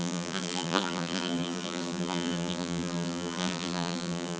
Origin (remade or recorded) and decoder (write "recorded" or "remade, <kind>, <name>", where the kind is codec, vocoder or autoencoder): remade, vocoder, BigVGAN v2